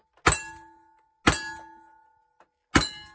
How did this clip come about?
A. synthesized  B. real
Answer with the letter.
B